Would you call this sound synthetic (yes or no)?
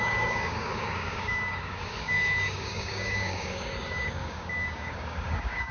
yes